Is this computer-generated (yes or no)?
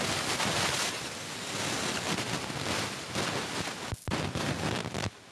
no